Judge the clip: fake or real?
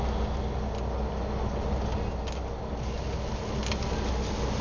real